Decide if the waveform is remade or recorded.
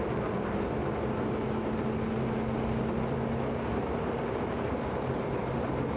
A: recorded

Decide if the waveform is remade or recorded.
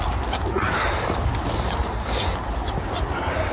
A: recorded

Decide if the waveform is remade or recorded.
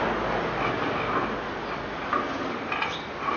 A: recorded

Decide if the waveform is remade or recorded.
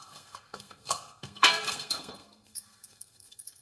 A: remade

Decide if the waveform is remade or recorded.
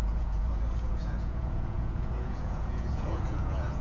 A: remade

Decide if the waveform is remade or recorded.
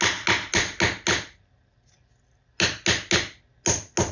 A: recorded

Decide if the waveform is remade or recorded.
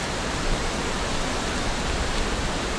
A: recorded